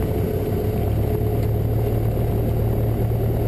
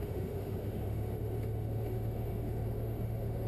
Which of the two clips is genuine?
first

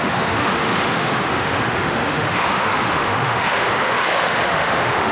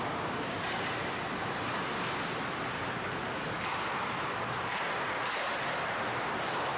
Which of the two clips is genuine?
second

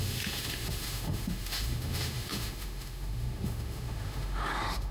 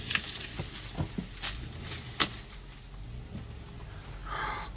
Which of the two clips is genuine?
second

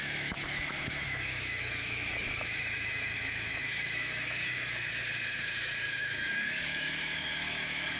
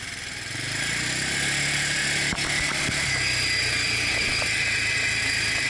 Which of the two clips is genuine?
second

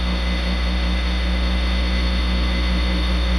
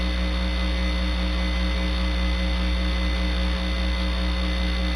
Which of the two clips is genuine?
second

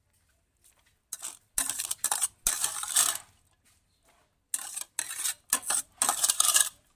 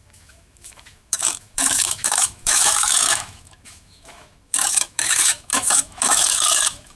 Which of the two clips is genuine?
first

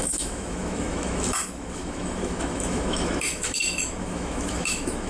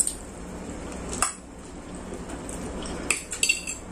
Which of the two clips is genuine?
second